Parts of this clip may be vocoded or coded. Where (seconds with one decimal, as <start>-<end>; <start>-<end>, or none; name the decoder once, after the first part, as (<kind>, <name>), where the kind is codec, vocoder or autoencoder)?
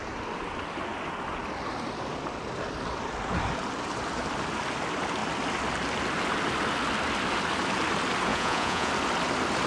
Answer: 8.3-8.9 (vocoder, Vocos)